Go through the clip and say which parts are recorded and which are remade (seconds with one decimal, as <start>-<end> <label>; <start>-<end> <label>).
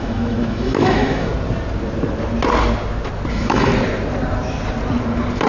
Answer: 0.0-1.3 remade; 1.3-3.3 recorded; 3.3-3.7 remade; 3.7-5.5 recorded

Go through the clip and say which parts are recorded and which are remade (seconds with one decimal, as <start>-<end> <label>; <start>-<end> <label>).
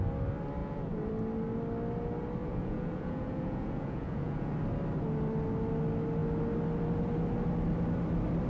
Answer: 0.0-0.6 recorded; 0.6-1.1 remade; 1.1-2.4 recorded; 2.4-4.5 remade; 4.5-8.5 recorded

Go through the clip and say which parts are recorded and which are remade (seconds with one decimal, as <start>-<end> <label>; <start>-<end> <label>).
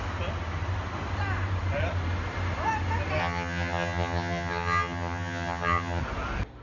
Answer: 0.0-3.2 recorded; 3.2-6.0 remade; 6.0-6.6 recorded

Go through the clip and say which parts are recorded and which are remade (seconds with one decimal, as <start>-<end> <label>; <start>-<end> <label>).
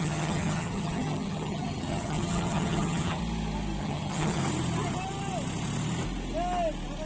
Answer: 0.0-3.2 remade; 3.2-3.8 recorded; 3.8-4.4 remade; 4.4-7.1 recorded